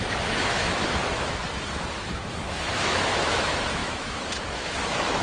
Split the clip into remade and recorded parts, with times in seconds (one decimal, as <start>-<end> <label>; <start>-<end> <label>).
0.0-1.4 remade; 1.4-1.9 recorded; 1.9-5.2 remade